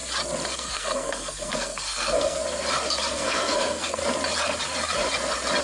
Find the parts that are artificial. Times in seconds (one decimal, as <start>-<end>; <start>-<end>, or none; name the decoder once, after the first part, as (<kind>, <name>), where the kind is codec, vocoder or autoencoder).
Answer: 0.5-2.4 (codec, SNAC); 3.1-4.0